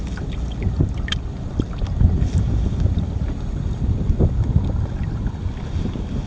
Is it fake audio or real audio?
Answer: real